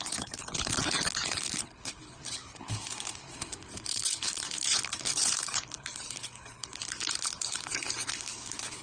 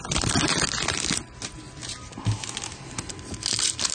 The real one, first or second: second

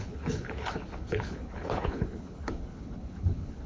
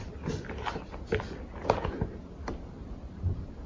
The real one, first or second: second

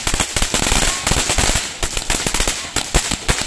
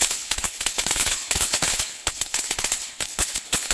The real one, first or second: first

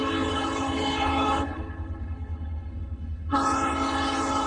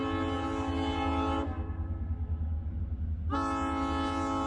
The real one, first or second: second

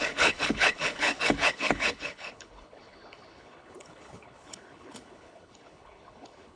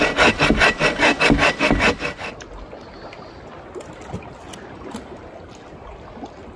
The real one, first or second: second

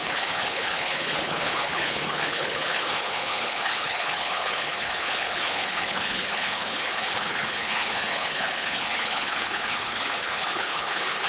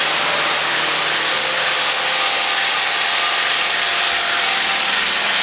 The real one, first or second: second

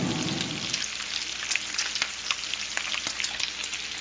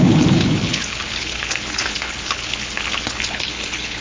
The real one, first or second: first